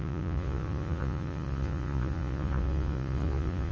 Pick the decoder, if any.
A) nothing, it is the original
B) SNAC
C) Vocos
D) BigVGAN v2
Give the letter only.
C